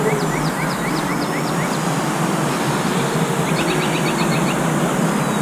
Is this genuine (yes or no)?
yes